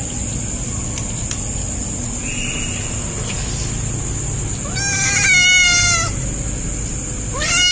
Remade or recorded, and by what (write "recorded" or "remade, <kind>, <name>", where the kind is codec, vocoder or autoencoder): recorded